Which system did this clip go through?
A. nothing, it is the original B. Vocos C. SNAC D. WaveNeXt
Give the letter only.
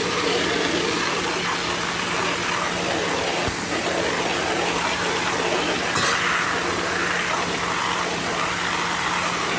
A